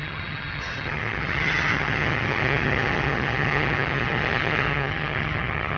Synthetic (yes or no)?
yes